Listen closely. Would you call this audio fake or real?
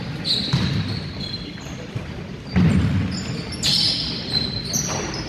real